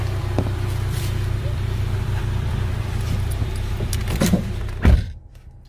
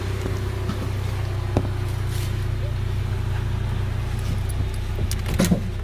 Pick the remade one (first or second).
first